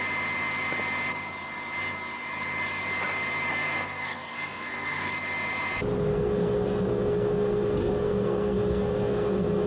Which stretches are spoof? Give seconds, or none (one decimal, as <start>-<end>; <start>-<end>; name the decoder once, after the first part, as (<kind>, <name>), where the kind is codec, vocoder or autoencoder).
3.5-5.1 (codec, SNAC); 6.1-9.7